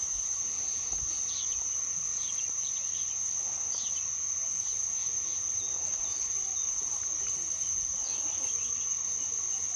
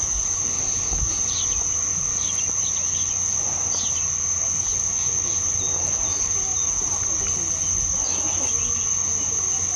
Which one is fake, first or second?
first